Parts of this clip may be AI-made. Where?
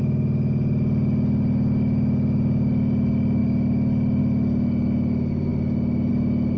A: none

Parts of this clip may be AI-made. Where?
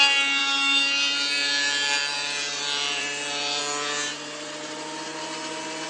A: 0.4-3.6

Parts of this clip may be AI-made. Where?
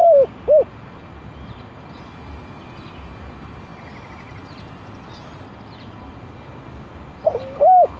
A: none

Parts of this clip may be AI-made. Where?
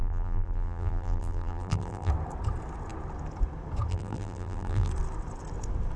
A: 0.0-2.1; 3.9-4.9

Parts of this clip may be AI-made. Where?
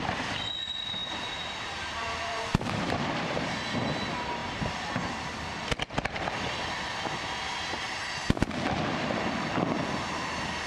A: 1.0-3.5